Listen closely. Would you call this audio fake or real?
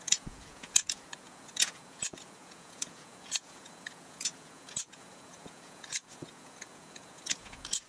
fake